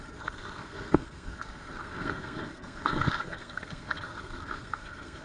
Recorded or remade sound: remade